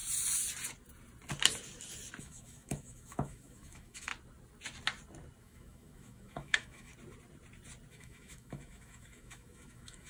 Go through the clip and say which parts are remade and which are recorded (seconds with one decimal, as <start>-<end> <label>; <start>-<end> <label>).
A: 0.0-2.2 recorded; 2.2-4.1 remade; 4.1-5.4 recorded; 5.4-6.9 remade; 6.9-7.9 recorded; 7.9-10.1 remade